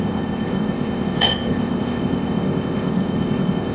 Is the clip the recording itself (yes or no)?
no